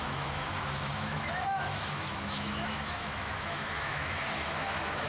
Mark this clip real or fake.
fake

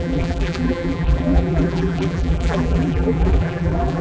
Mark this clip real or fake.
fake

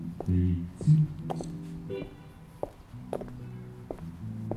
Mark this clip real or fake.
real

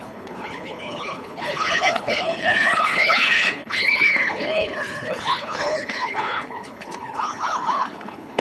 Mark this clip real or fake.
fake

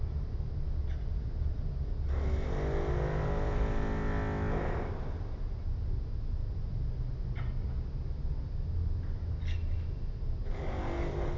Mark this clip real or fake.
real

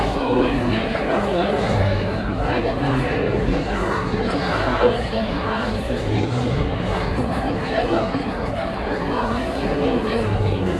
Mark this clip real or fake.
fake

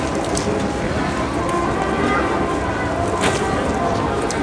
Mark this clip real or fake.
real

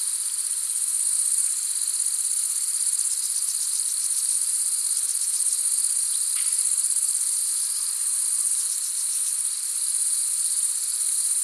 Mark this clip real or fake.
fake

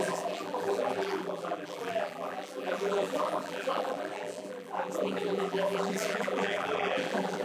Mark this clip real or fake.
fake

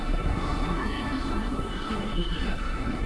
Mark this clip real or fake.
fake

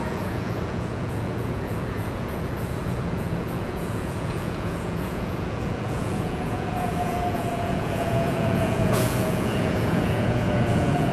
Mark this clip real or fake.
fake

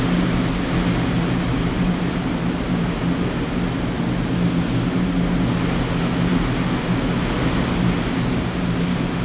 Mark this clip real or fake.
real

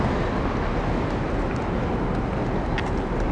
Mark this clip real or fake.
real